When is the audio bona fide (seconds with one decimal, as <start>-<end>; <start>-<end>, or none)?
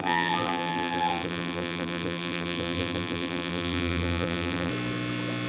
4.7-5.5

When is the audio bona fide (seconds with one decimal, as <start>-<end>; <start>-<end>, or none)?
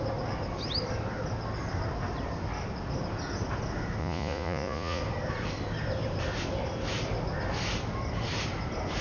0.0-4.0; 5.0-9.0